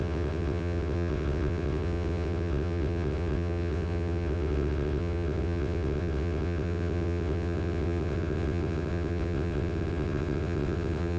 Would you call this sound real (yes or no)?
no